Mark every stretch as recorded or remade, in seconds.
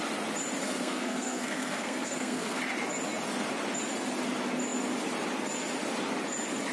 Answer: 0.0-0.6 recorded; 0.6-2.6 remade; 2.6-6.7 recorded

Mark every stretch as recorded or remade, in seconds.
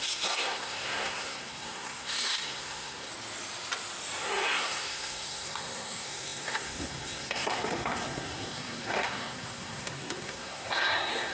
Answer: 0.0-3.1 remade; 3.1-4.2 recorded; 4.2-11.3 remade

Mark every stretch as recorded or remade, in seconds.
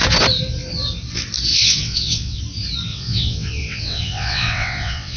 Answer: 0.0-1.5 recorded; 1.5-2.4 remade; 2.4-2.9 recorded; 2.9-5.2 remade